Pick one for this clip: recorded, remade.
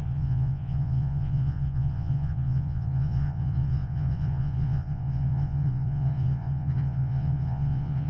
remade